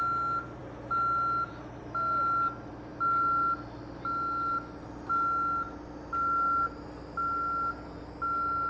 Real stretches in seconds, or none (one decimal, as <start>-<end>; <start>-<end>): 0.0-8.7